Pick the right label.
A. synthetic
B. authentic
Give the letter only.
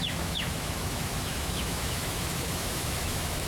A